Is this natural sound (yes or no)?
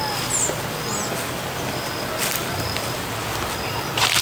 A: no